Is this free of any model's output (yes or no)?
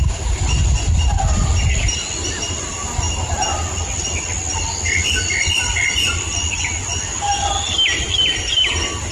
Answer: yes